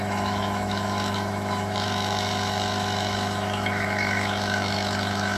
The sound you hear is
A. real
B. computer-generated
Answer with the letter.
B